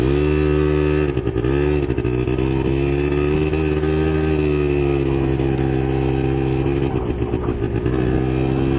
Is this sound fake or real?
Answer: real